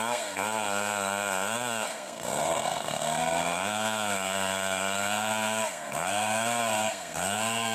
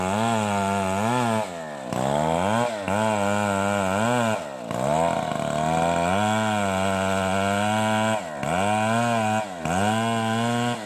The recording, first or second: second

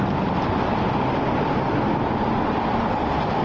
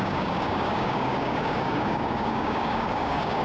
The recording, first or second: first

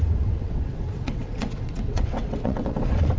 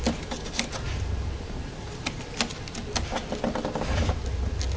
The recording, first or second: second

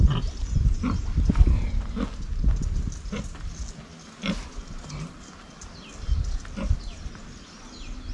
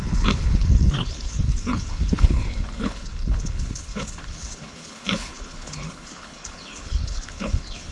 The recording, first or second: first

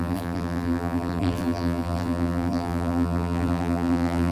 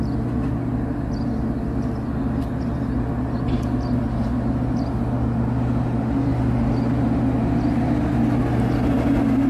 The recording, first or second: second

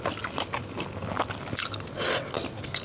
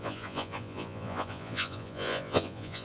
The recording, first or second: first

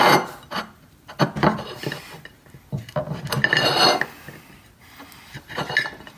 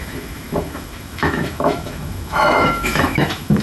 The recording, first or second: first